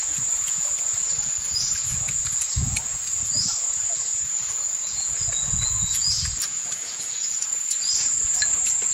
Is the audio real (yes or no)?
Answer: no